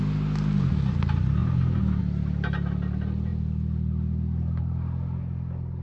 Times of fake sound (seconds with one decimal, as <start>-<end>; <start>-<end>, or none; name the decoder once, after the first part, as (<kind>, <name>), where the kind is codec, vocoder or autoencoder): 1.4-2.0 (vocoder, BigVGAN v2)